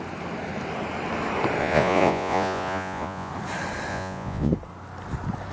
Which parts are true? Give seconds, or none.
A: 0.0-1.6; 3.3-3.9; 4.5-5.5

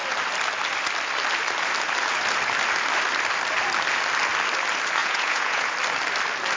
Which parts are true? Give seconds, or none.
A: 0.0-5.0; 5.7-6.6

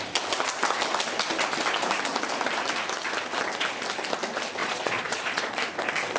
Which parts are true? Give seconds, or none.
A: 0.0-4.6; 5.5-6.2

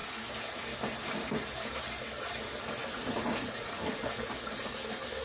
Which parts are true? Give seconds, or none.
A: 0.0-2.8; 3.9-5.2

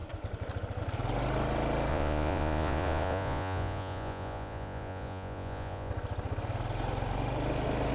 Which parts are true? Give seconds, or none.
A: 0.0-1.9; 5.9-7.9

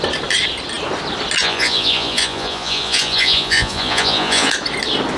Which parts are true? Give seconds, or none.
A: 0.0-1.4; 4.5-5.2

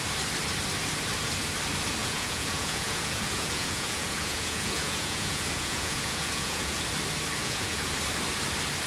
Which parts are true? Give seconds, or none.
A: 0.0-2.0; 6.8-7.4; 7.9-8.9

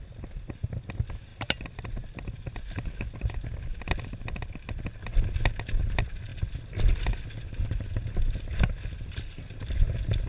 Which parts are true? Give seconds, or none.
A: 0.0-10.3